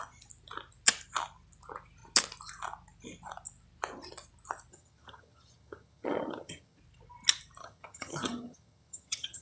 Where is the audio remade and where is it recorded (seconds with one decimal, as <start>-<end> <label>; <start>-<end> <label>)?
0.0-4.7 recorded; 4.7-6.8 remade; 6.8-7.6 recorded; 7.6-9.4 remade

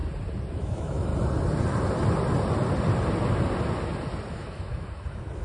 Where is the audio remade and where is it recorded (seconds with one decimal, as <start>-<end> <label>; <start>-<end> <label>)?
0.0-0.5 recorded; 0.5-1.1 remade; 1.1-4.3 recorded; 4.3-5.4 remade

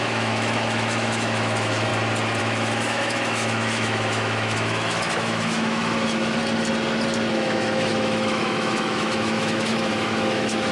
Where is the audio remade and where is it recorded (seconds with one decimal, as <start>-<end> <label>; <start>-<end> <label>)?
0.0-1.9 remade; 1.9-2.4 recorded; 2.4-6.4 remade; 6.4-7.3 recorded; 7.3-10.7 remade

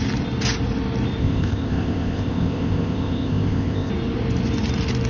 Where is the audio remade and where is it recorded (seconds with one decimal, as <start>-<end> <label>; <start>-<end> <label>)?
0.0-1.2 recorded; 1.2-3.9 remade; 3.9-5.1 recorded